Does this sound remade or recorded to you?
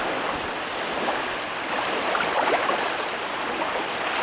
recorded